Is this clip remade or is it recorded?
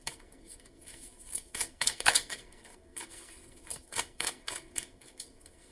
remade